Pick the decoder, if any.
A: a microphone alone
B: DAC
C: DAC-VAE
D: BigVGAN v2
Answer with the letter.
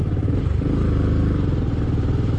A